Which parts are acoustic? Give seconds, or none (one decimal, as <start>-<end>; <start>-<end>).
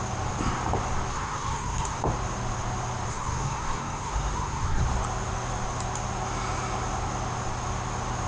0.0-1.1; 2.0-3.1; 4.8-8.3